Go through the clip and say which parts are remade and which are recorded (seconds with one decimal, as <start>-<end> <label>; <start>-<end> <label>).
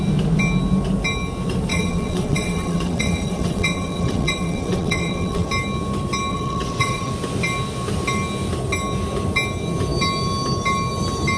0.0-1.7 recorded; 1.7-5.5 remade; 5.5-6.3 recorded; 6.3-7.1 remade; 7.1-11.4 recorded